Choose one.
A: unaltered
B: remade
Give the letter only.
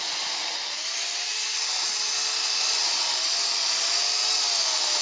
A